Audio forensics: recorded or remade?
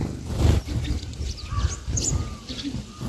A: recorded